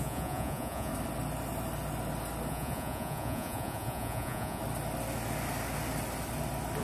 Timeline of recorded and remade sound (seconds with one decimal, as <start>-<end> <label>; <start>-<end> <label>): 0.0-0.9 remade; 0.9-2.5 recorded; 2.5-4.6 remade; 4.6-6.8 recorded